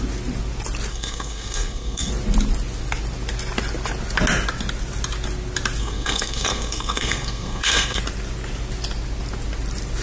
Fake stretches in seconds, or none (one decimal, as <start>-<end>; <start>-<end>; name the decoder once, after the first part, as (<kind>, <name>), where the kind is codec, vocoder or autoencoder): 0.9-2.1 (codec, SNAC); 5.8-8.0